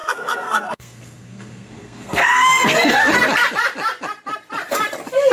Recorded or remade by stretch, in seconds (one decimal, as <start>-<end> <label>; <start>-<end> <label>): 0.0-3.1 remade; 3.1-5.3 recorded